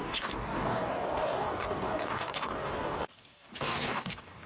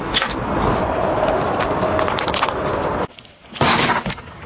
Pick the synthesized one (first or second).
first